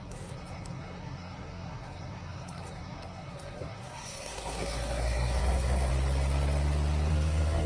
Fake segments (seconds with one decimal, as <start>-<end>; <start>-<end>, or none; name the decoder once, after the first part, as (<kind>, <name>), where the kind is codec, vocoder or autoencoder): 0.0-5.9 (codec, SNAC); 7.1-7.7